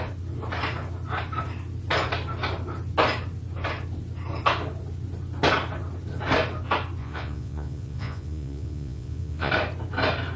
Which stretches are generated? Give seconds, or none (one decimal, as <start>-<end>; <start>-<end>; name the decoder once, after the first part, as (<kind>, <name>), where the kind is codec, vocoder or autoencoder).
7.0-9.5 (vocoder, Vocos)